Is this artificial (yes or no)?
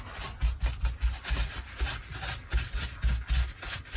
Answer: no